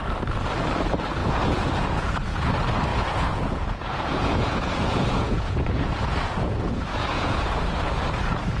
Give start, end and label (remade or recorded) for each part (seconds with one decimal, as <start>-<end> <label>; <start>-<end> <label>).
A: 0.0-1.2 recorded; 1.2-2.5 remade; 2.5-2.9 recorded; 2.9-7.6 remade; 7.6-8.6 recorded